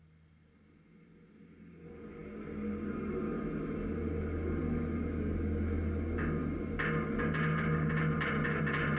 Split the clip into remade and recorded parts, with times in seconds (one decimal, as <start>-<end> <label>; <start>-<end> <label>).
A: 0.0-9.0 recorded